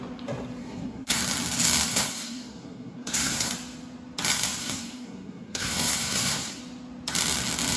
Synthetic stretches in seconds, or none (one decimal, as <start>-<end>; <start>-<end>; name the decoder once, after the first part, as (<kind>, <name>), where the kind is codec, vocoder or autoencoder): 0.6-1.2 (codec, SNAC); 1.9-3.5; 4.6-6.6